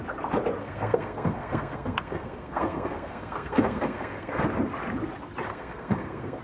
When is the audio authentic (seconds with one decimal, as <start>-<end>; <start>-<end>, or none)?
0.0-0.6; 4.4-5.5